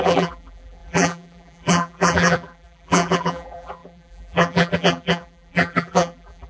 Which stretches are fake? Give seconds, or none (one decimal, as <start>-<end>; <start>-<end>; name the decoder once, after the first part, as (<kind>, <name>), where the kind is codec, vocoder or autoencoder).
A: 0.0-6.5 (vocoder, BigVGAN v2)